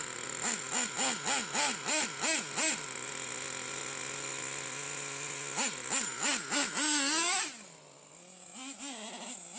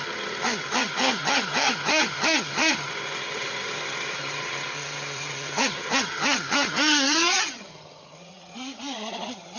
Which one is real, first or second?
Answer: first